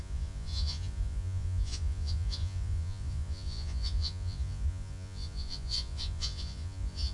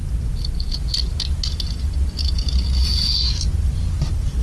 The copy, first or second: first